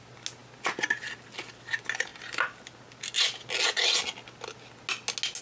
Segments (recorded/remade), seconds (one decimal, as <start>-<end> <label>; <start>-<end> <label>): 0.0-5.4 recorded